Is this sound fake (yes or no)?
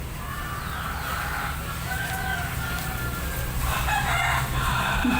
no